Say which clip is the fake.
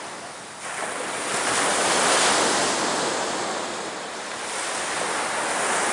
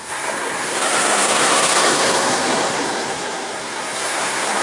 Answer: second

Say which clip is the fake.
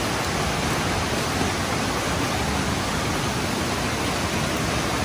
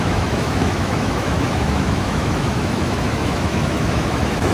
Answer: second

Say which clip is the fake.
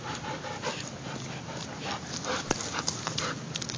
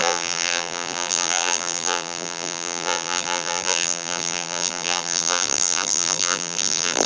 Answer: second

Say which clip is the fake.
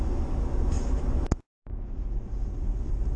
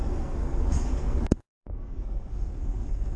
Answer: second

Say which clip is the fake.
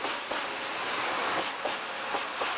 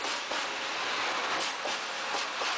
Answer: first